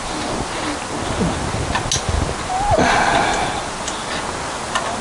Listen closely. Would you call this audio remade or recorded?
recorded